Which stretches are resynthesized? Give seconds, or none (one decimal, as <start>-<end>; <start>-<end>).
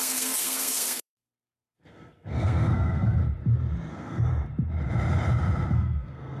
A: 0.0-3.2; 3.9-4.3; 5.7-6.4